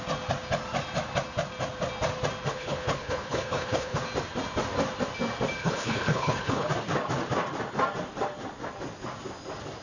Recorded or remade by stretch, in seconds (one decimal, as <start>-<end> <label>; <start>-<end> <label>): 0.0-2.5 recorded; 2.5-4.0 remade; 4.0-5.6 recorded; 5.6-6.7 remade; 6.7-9.8 recorded